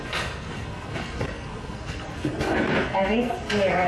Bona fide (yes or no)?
no